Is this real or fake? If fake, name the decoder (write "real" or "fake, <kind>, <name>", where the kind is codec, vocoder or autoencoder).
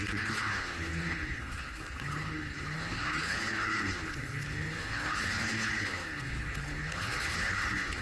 fake, codec, HILCodec